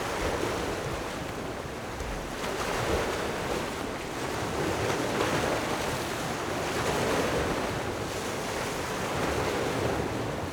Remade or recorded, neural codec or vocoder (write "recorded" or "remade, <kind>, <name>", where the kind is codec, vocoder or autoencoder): recorded